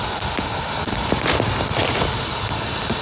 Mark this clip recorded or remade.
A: recorded